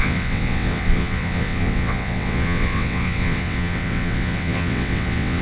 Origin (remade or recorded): remade